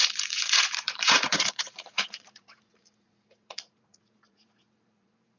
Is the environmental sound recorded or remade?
remade